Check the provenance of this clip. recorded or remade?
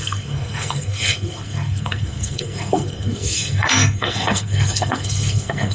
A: remade